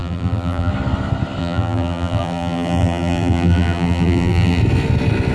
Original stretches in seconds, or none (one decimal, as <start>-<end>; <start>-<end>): 0.7-1.4; 4.6-5.3